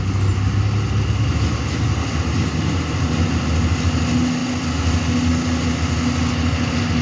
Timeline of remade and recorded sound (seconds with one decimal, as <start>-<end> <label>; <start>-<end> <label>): 0.0-7.0 recorded